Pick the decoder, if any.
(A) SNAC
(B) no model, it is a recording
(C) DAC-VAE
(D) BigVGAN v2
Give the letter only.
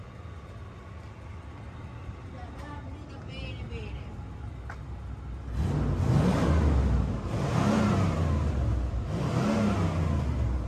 B